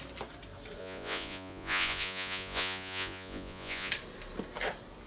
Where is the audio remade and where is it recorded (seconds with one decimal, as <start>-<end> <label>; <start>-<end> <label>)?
0.0-0.8 recorded; 0.8-3.9 remade; 3.9-5.1 recorded